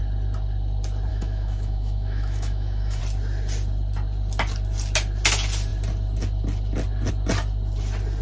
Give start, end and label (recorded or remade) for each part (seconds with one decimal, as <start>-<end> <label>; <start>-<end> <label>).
0.0-1.1 recorded; 1.1-3.0 remade; 3.0-8.2 recorded